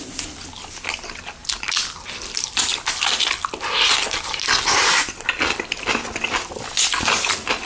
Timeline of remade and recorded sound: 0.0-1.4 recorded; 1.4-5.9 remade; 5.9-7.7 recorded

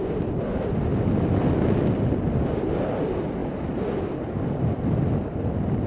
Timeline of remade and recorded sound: 0.0-5.9 recorded

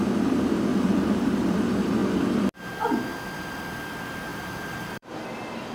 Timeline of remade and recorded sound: 0.0-0.7 recorded; 0.7-1.6 remade; 1.6-4.3 recorded; 4.3-5.2 remade; 5.2-5.7 recorded